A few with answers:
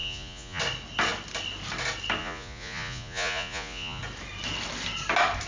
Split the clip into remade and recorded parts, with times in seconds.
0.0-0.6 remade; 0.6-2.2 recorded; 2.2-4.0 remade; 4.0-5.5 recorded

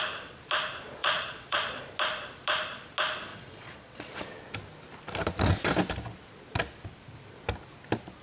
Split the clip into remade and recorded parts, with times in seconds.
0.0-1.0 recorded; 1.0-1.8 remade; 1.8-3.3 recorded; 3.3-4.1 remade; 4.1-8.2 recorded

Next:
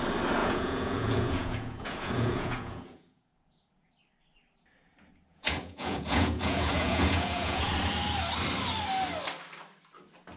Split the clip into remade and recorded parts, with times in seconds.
0.0-0.4 recorded; 0.4-3.9 remade; 3.9-5.3 recorded; 5.3-7.7 remade; 7.7-10.4 recorded